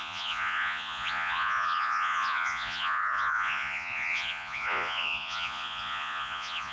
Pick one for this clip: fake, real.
fake